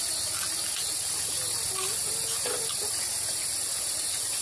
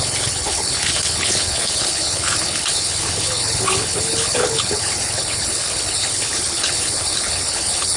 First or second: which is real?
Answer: first